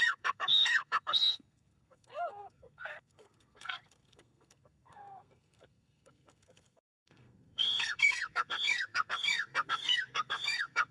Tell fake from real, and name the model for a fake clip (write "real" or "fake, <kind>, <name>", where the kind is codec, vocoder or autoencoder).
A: fake, codec, SNAC